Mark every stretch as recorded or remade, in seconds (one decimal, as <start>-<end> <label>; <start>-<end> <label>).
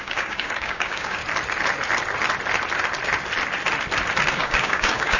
0.0-1.2 remade; 1.2-4.3 recorded; 4.3-5.2 remade